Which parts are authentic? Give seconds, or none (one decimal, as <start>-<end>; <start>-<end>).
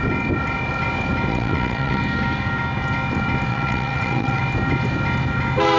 0.0-1.3; 2.0-3.5; 4.4-5.8